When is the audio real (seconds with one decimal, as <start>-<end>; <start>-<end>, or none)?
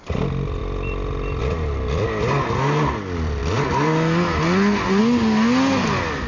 0.0-6.3